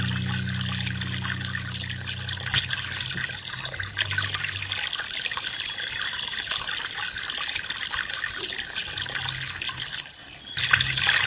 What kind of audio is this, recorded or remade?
recorded